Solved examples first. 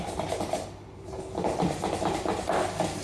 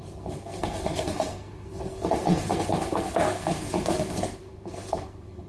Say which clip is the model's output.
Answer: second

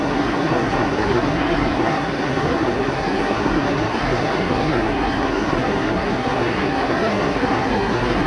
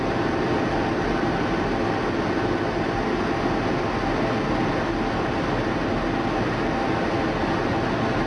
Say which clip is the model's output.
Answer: first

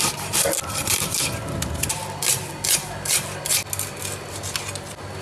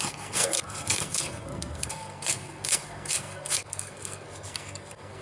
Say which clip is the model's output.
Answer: second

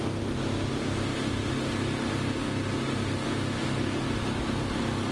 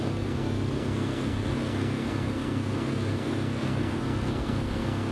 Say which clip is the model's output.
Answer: second